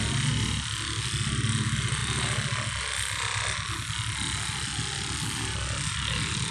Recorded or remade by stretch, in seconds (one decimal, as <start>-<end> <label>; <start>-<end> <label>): 0.0-6.5 recorded